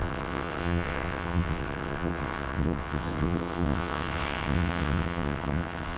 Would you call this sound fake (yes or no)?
yes